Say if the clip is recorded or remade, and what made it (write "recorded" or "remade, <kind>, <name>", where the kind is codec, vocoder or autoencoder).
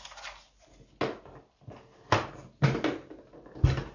recorded